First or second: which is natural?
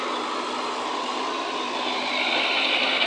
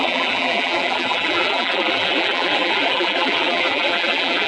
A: first